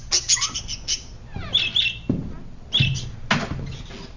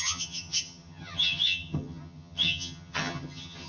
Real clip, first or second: first